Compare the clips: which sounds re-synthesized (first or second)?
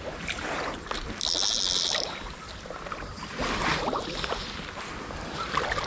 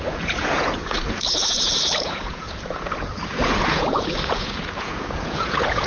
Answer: second